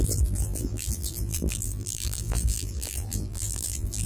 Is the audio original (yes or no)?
no